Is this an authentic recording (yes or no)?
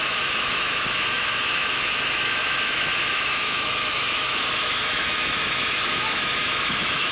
no